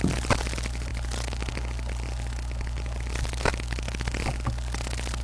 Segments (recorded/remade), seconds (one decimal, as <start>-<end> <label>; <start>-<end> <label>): 0.0-5.2 recorded